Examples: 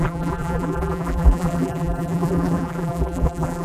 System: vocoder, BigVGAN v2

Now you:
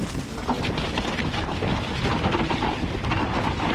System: none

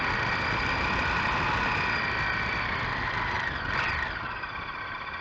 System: vocoder, BigVGAN v2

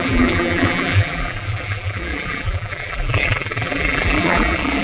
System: vocoder, BigVGAN v2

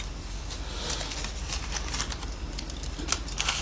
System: vocoder, BigVGAN v2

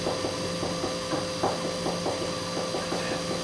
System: none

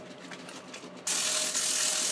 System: none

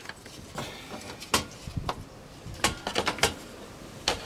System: none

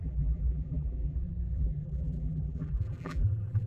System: vocoder, BigVGAN v2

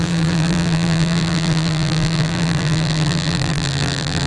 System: vocoder, BigVGAN v2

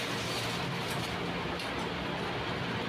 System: none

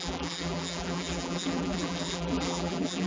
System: vocoder, BigVGAN v2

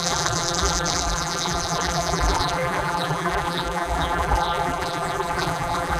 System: vocoder, BigVGAN v2